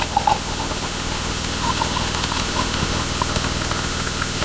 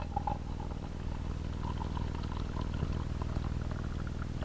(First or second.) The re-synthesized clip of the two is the first